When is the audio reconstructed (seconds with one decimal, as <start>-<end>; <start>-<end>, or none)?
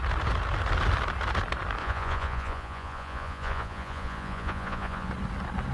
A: 1.8-5.1